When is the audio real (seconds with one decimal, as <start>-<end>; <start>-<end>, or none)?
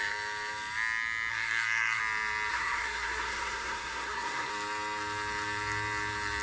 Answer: 0.0-1.3; 2.0-2.5; 4.5-6.4